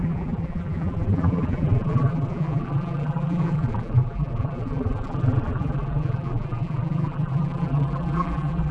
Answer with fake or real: fake